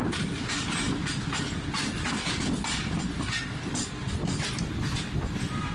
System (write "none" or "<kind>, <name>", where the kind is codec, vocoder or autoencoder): none